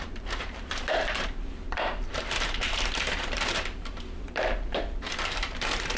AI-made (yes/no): yes